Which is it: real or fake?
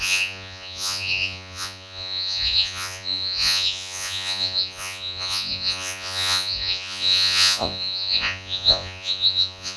fake